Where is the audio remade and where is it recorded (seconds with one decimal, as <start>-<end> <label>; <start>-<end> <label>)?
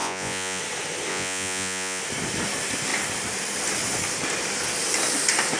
0.0-0.6 remade; 0.6-1.1 recorded; 1.1-2.0 remade; 2.0-5.6 recorded